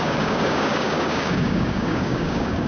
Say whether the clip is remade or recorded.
remade